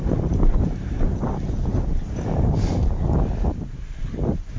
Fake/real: real